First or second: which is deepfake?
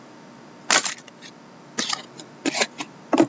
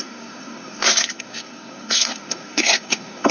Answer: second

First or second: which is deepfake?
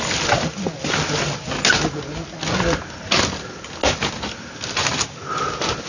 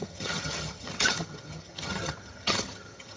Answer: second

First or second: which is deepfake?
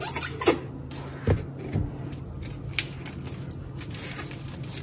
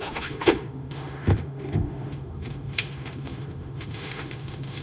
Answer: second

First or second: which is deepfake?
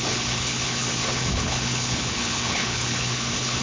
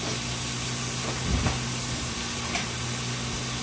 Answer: first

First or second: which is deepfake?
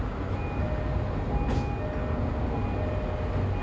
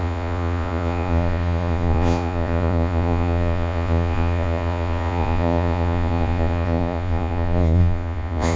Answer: second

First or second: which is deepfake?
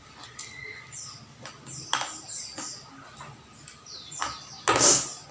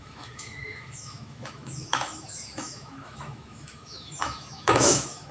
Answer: second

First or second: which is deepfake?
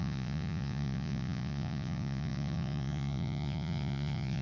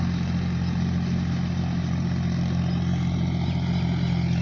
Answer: first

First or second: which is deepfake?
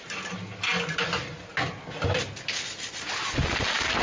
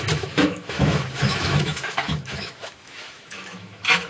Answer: second